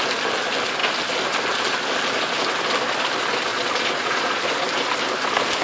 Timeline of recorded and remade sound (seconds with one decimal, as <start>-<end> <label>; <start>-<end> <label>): 0.0-3.5 recorded; 3.5-4.6 remade; 4.6-5.6 recorded